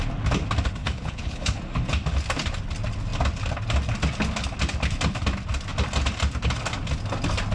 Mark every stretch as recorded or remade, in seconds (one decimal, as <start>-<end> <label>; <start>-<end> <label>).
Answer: 0.0-0.8 recorded; 0.8-1.6 remade; 1.6-7.5 recorded